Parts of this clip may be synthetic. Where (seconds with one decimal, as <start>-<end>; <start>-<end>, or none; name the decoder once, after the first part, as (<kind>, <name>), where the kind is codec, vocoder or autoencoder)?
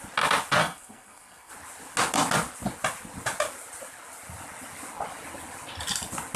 0.6-1.5 (codec, SNAC)